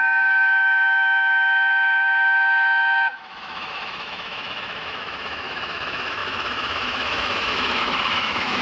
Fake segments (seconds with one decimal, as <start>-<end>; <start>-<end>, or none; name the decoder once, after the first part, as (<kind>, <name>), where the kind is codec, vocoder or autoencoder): 0.0-8.6 (autoencoder, DAC-VAE)